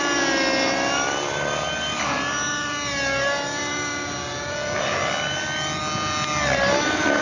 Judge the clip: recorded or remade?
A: recorded